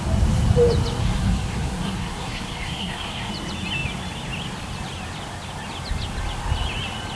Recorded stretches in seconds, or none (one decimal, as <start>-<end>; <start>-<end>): 0.0-1.0; 3.3-7.2